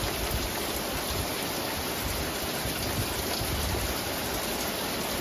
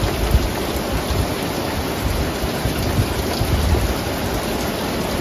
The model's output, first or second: first